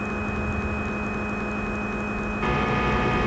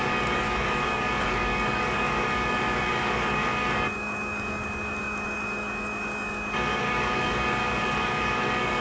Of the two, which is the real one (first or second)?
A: first